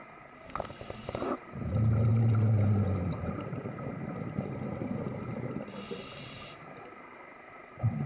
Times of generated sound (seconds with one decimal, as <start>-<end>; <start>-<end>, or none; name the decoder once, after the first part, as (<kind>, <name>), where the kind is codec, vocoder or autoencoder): none